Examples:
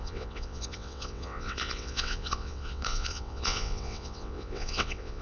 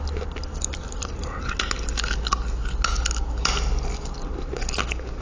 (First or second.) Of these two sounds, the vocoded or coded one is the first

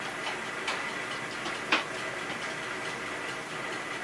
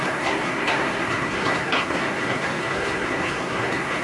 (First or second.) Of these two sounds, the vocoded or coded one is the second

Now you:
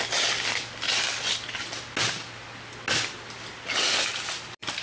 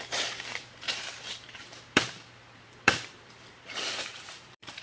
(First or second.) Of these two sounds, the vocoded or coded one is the second